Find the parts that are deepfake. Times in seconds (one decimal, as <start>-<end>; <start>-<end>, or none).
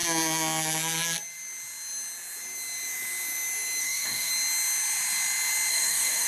3.8-4.3; 5.7-6.3